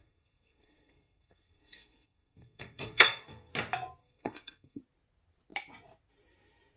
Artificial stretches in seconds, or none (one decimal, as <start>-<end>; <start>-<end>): 0.0-3.5; 4.0-4.8